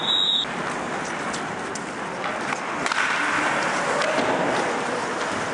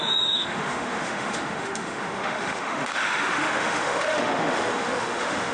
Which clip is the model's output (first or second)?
second